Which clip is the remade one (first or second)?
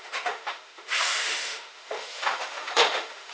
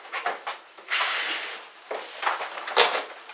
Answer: first